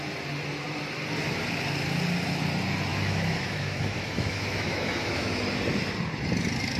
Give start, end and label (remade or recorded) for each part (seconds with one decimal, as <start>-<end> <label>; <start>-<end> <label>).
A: 0.0-2.9 recorded; 2.9-5.4 remade; 5.4-6.8 recorded